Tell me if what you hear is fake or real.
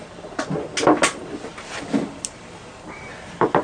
real